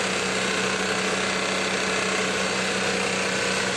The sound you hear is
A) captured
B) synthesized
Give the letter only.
A